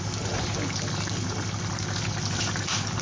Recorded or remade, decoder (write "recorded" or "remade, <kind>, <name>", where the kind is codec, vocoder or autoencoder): recorded